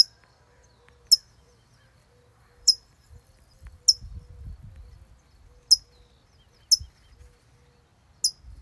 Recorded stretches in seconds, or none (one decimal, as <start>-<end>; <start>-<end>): 0.0-2.3; 3.8-8.6